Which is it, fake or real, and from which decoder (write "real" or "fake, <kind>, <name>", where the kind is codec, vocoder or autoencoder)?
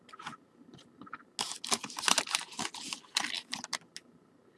real